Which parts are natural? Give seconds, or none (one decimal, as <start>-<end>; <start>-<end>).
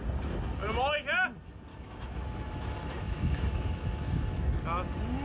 0.0-1.7; 4.6-5.2